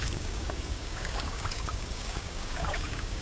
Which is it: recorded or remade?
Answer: remade